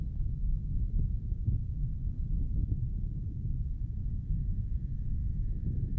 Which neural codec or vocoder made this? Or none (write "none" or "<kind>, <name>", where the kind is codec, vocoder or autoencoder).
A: none